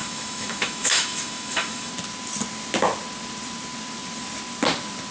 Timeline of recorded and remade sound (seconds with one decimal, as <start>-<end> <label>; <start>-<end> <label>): 0.0-1.9 remade; 1.9-5.1 recorded